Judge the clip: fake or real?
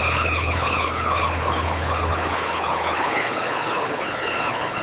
fake